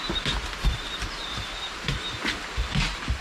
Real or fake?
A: real